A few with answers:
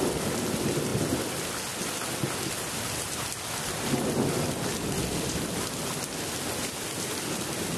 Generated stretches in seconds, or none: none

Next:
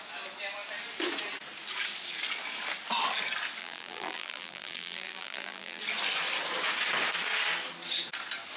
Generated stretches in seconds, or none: 3.6-5.8

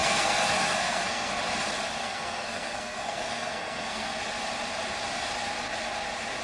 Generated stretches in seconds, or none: 0.0-1.3; 2.0-4.2

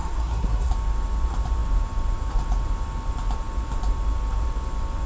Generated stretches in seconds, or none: 0.0-0.7

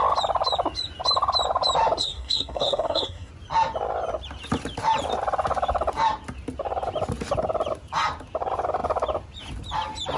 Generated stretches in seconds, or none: 2.0-3.3

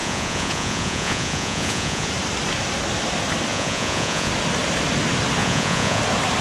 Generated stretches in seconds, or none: 0.0-2.1; 3.5-4.3; 5.4-6.0

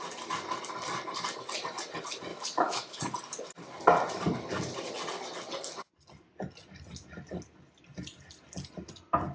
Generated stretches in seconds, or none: 2.3-3.0